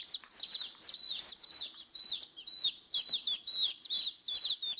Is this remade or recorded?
remade